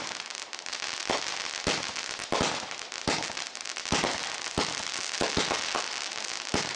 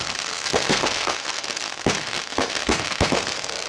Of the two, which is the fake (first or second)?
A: second